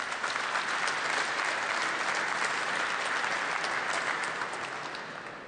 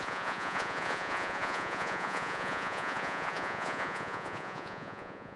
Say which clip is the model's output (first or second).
second